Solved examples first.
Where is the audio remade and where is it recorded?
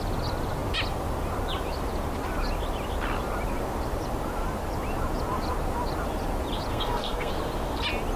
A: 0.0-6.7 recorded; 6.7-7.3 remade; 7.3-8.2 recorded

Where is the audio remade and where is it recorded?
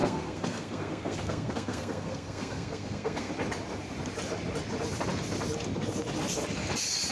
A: 0.0-3.3 remade; 3.3-7.1 recorded